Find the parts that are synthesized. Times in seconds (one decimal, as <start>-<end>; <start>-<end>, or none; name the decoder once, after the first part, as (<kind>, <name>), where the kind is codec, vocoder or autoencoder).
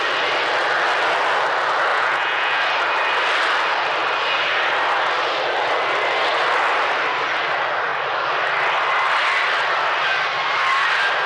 1.9-2.6 (vocoder, Vocos)